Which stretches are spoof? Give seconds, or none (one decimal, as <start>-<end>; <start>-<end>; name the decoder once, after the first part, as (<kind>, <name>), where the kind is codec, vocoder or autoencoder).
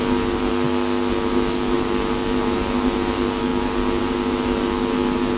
0.0-0.5 (codec, DAC); 1.1-5.4